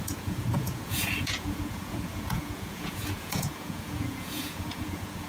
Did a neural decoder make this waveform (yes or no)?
yes